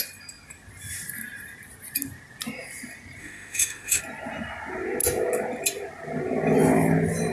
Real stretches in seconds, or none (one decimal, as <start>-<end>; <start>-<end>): 0.0-3.2; 4.0-7.3